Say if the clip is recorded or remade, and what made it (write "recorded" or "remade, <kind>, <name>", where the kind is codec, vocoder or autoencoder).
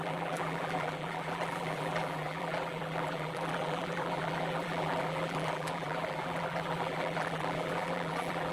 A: remade, vocoder, BigVGAN v2